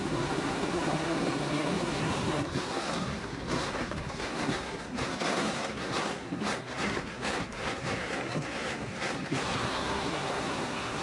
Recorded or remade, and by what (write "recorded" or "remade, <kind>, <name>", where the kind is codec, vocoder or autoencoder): remade, codec, SNAC